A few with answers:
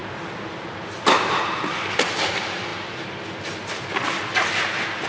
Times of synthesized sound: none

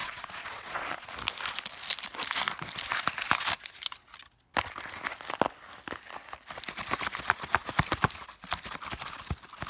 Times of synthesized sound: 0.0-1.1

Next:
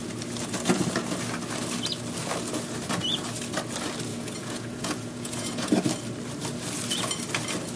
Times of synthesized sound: 4.1-5.7